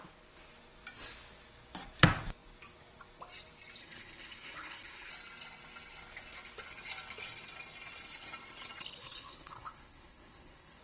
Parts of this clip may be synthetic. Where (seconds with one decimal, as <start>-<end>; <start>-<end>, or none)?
3.8-5.1; 9.0-10.8